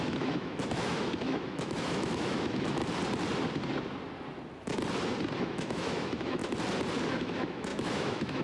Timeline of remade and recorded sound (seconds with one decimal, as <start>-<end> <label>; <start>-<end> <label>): 0.0-2.8 remade; 2.8-5.4 recorded; 5.4-6.4 remade; 6.4-7.1 recorded; 7.1-8.4 remade